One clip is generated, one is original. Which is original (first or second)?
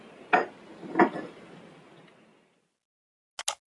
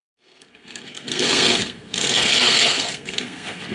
first